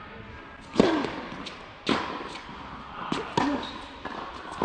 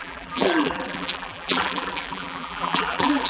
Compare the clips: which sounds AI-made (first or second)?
second